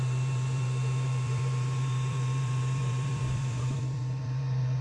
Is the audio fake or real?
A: fake